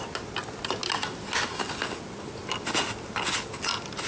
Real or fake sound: real